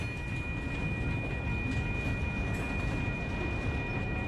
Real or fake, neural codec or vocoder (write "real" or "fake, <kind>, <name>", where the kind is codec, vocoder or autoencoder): real